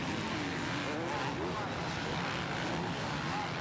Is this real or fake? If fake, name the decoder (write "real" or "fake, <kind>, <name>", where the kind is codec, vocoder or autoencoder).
real